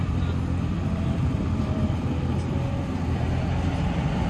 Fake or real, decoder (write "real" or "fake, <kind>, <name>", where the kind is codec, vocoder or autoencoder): fake, vocoder, BigVGAN v2